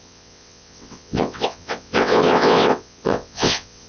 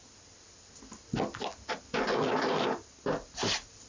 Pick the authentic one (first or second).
second